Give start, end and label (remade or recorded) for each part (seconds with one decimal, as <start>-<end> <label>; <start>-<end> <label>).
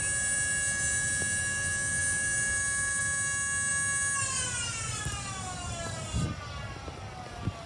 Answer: 0.0-7.7 recorded